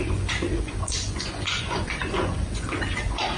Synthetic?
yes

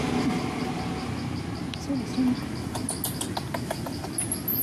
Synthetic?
no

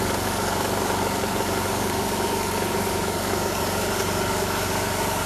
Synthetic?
yes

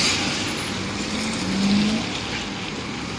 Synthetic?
no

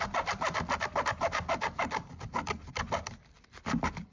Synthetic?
no